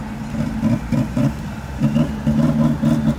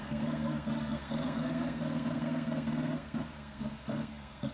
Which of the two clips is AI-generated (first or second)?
second